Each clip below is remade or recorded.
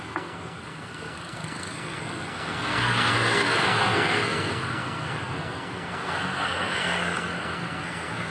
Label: remade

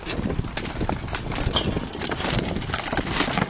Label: recorded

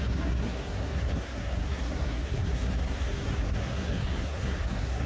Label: remade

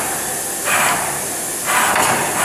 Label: recorded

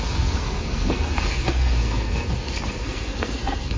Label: remade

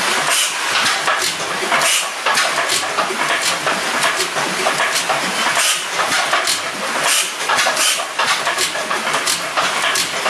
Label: recorded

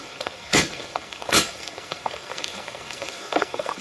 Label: remade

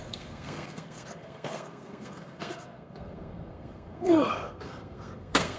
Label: remade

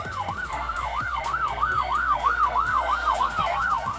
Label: remade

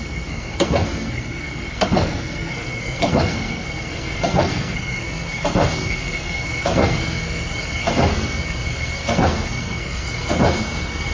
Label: remade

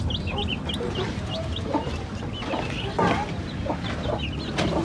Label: recorded